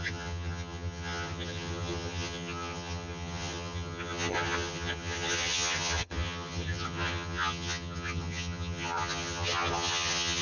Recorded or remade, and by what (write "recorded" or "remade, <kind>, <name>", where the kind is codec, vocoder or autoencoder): remade, vocoder, HiFi-GAN